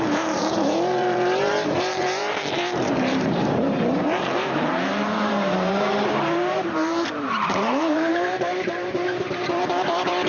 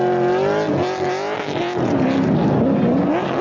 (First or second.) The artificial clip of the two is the first